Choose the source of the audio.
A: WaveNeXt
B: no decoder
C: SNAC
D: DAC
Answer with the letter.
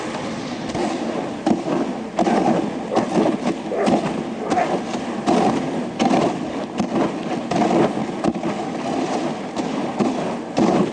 B